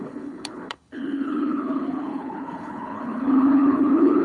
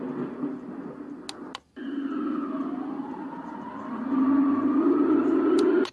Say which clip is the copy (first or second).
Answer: first